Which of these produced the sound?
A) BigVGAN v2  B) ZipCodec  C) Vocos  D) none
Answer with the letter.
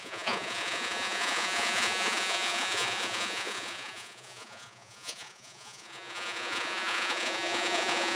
C